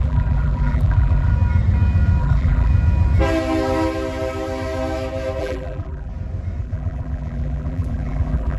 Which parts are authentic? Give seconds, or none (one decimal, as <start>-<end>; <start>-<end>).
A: 1.3-2.2; 2.7-5.4; 6.1-6.6